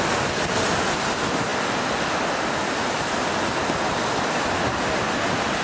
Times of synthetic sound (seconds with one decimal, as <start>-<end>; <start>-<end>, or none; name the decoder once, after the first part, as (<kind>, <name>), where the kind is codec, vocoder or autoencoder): none